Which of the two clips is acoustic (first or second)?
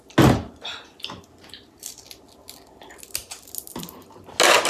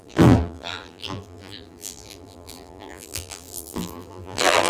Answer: first